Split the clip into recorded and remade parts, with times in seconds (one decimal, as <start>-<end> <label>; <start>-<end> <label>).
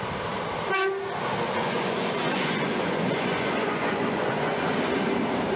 0.0-1.6 recorded; 1.6-4.7 remade; 4.7-5.6 recorded